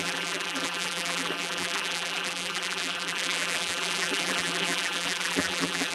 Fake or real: fake